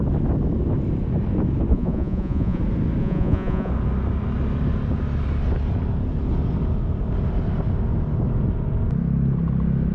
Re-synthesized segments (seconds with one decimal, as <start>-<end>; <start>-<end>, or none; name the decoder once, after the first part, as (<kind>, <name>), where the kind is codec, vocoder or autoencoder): 1.7-2.6 (vocoder, Vocos); 3.0-3.7